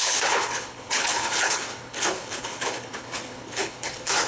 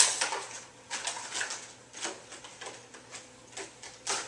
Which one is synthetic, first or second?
first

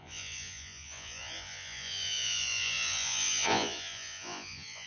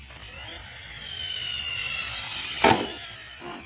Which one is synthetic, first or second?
first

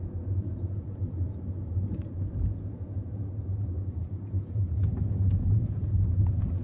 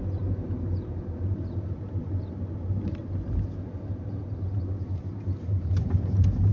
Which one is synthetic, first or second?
first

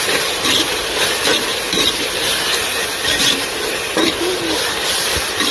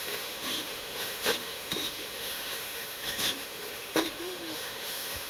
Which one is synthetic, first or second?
second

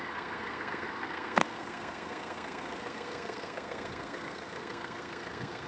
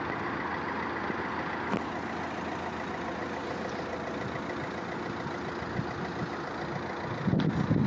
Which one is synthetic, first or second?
first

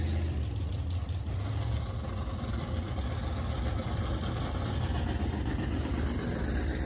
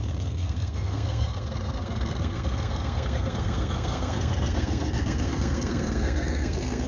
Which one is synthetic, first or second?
second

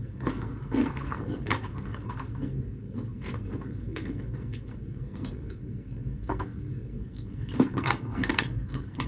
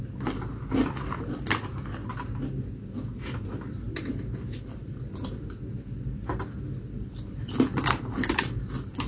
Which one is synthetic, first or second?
first